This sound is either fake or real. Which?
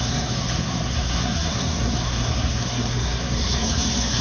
fake